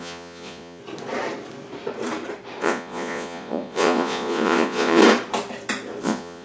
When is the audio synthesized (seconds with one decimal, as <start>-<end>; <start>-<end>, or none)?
0.0-0.8; 2.6-5.0; 6.0-6.4